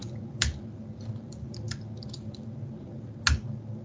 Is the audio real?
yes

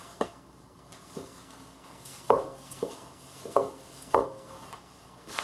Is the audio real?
no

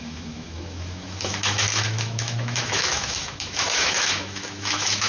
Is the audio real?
no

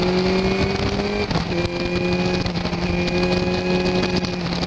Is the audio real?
yes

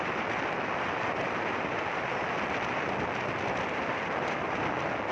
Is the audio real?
yes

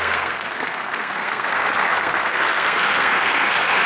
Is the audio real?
no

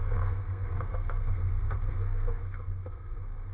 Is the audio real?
no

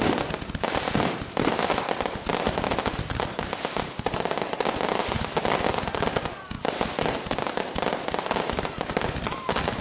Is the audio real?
yes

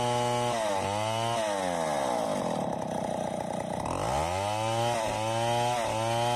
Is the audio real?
yes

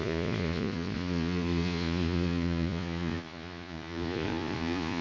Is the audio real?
no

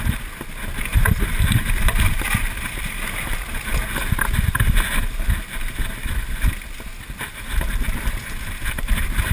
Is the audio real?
yes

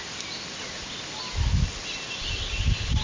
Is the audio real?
yes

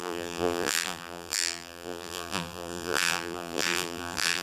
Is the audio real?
no